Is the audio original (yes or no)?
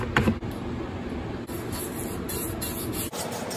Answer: yes